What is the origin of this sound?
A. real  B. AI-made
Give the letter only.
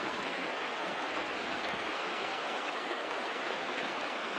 B